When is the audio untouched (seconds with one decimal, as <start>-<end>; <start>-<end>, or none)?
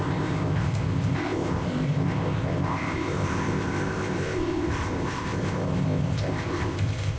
none